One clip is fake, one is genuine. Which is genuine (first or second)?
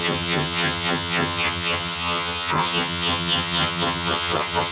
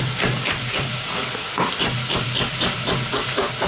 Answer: second